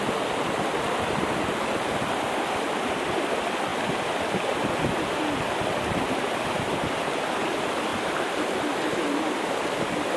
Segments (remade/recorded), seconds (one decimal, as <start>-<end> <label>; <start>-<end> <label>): 0.0-3.7 recorded; 3.7-4.5 remade; 4.5-7.9 recorded; 7.9-8.9 remade; 8.9-10.2 recorded